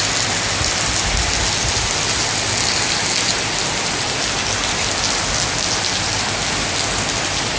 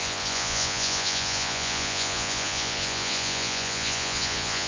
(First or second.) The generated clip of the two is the second